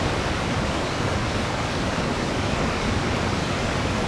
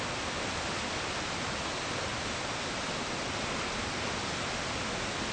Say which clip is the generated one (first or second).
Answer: first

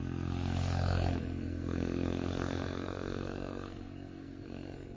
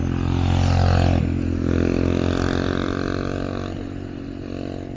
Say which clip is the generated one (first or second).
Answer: first